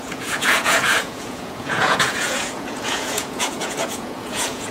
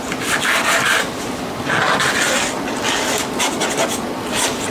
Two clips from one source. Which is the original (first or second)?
second